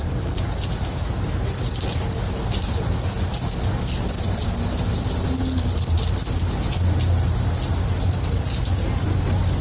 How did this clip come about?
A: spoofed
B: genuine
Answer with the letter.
B